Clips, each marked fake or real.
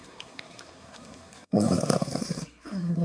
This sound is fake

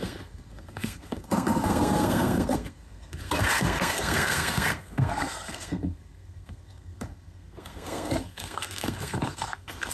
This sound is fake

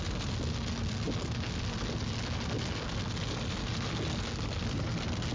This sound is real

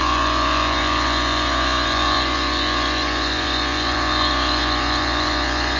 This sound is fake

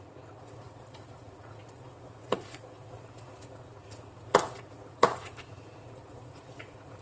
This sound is fake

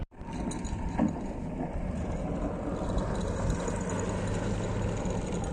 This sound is real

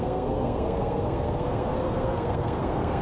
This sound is fake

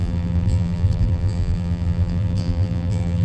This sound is fake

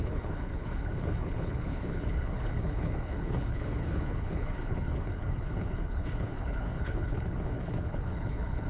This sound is fake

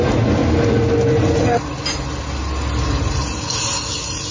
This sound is real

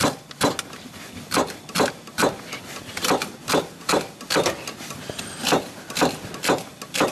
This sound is real